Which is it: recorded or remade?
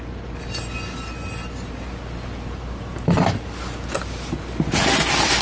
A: recorded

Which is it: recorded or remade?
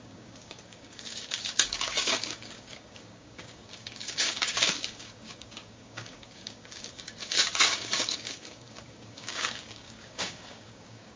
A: remade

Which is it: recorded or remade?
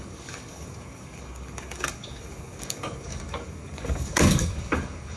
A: remade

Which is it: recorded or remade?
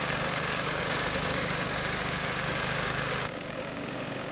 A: remade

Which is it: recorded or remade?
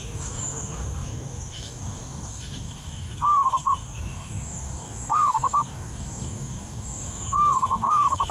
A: remade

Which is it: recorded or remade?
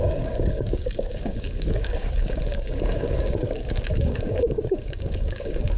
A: remade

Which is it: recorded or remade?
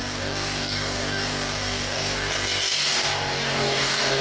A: remade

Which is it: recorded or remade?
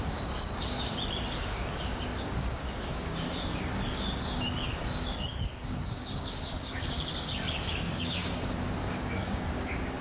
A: remade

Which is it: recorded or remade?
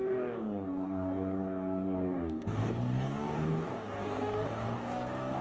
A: remade